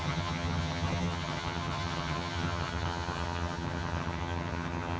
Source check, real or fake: fake